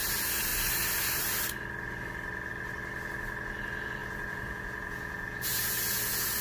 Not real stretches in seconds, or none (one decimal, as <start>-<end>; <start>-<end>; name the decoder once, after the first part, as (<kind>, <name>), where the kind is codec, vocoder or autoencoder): 4.0-6.4 (vocoder, Vocos)